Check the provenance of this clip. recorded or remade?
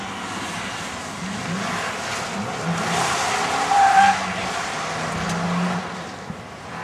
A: recorded